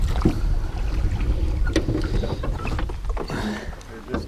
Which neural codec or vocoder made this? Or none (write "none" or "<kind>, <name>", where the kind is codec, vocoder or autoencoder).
none